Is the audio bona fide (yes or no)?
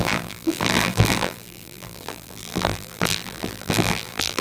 no